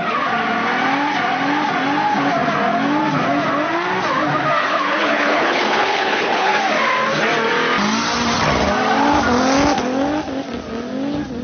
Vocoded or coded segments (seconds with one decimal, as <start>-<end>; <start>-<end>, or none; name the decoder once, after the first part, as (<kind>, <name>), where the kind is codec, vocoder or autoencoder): 4.6-6.5 (codec, HILCodec)